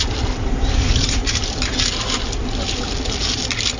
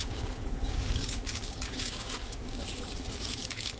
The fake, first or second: second